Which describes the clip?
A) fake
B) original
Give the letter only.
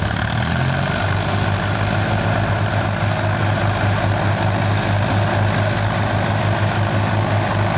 B